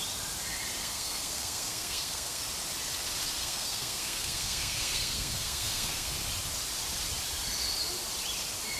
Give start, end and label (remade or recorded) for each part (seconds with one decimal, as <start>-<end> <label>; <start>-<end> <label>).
0.0-0.8 recorded; 0.8-2.4 remade; 2.4-3.4 recorded; 3.4-6.1 remade; 6.1-8.8 recorded